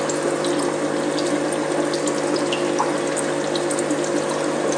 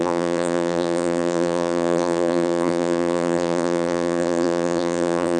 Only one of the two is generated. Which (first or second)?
second